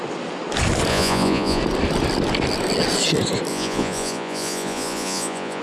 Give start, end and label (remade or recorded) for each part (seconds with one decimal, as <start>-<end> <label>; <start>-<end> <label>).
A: 0.0-0.9 recorded; 0.9-1.6 remade; 1.6-3.5 recorded; 3.5-5.6 remade

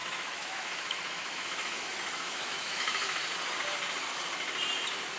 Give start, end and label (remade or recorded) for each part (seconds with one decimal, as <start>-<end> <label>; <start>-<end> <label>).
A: 0.0-3.2 remade; 3.2-5.2 recorded